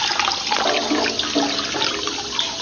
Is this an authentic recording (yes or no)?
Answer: yes